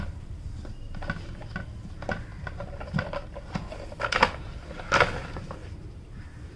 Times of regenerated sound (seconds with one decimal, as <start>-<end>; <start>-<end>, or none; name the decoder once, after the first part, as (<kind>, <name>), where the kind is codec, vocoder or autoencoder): 5.6-6.6 (vocoder, BigVGAN v2)